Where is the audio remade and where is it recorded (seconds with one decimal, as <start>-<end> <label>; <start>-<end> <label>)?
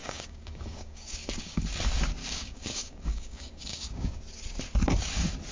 0.0-1.6 remade; 1.6-2.2 recorded; 2.2-4.2 remade; 4.2-5.5 recorded